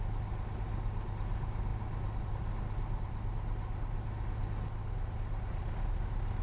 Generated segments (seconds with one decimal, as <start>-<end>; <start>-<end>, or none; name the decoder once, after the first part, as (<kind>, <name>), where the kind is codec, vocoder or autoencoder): none

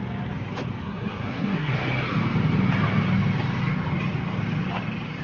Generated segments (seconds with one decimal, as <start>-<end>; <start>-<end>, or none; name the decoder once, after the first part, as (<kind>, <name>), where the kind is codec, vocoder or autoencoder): 0.8-1.8 (codec, SNAC)

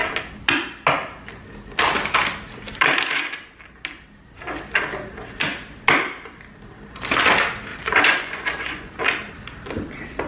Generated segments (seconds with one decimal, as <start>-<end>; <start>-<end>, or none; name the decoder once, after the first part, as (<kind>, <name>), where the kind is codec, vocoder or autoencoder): 7.7-9.0 (vocoder, Vocos)

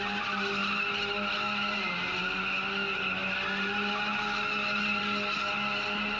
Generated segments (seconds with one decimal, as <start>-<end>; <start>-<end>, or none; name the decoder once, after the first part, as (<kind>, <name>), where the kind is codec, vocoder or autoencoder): none

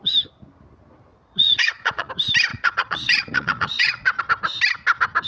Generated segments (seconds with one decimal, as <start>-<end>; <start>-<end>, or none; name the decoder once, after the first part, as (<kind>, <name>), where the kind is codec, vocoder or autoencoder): 1.1-2.1 (vocoder, Vocos); 2.5-4.2